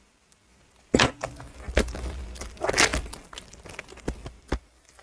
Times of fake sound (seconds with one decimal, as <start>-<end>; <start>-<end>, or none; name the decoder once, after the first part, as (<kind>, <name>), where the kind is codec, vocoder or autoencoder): none